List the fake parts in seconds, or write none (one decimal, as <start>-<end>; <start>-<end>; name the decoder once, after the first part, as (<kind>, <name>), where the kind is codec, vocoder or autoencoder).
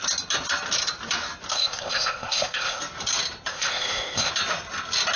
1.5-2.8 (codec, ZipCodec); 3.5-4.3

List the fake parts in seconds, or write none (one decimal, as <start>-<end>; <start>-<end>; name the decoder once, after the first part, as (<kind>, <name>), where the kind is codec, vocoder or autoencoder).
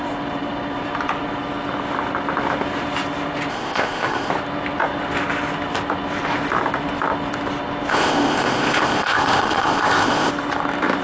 3.5-4.3 (codec, ZipCodec); 7.9-10.3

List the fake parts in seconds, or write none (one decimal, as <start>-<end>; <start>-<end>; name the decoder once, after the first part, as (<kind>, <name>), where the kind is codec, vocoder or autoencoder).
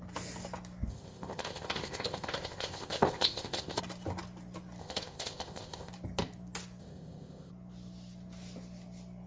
0.9-3.8 (codec, ZipCodec); 4.8-5.9; 6.8-7.5